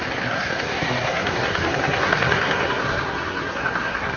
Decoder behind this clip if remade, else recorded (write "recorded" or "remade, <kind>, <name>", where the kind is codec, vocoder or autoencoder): remade, codec, SNAC